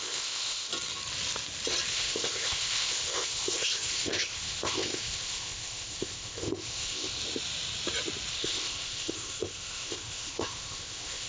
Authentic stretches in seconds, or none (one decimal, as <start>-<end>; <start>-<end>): 0.7-1.9; 7.2-8.3